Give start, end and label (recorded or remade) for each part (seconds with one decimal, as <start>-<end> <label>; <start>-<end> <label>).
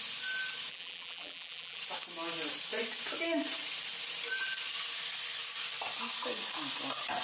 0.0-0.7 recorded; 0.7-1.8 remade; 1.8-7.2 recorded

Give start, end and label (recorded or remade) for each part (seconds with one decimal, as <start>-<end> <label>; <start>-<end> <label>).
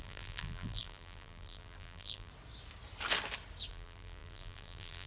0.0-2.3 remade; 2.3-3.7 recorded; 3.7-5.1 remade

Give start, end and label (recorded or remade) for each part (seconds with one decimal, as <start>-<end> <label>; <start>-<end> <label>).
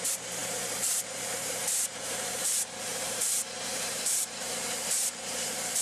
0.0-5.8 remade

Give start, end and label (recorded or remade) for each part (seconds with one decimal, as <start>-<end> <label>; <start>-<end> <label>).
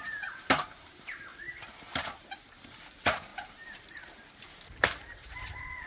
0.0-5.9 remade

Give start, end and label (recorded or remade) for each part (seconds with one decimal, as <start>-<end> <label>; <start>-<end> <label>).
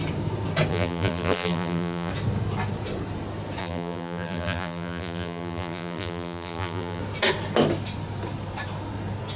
0.0-0.7 recorded; 0.7-2.1 remade; 2.1-3.6 recorded; 3.6-7.0 remade; 7.0-9.4 recorded